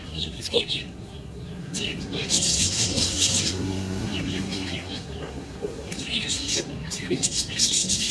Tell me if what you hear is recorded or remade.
remade